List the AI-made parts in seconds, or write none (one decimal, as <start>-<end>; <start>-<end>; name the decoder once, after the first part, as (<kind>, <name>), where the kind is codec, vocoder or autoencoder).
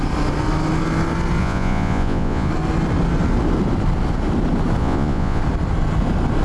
1.4-2.5 (vocoder, Vocos); 4.8-5.4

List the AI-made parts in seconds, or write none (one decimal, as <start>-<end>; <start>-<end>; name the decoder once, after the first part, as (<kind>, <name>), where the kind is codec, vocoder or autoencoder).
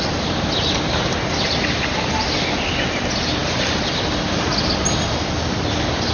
none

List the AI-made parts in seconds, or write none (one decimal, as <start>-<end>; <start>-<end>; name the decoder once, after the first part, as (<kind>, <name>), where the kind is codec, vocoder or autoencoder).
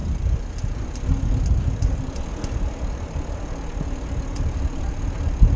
none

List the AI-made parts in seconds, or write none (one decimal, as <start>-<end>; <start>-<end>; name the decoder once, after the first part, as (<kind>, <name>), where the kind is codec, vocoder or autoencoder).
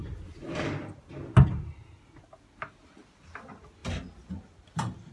none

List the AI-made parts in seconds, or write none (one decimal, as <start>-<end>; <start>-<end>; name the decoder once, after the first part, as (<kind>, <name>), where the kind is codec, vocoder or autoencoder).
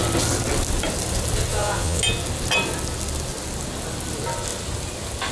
1.5-2.0 (vocoder, Vocos)